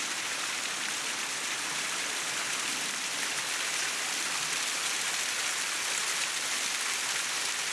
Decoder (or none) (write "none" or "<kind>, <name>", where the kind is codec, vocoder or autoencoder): none